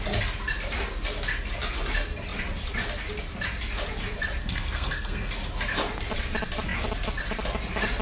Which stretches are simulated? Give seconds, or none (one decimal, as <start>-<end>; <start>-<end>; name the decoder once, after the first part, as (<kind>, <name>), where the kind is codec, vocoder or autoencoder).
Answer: 4.4-5.3 (codec, SNAC)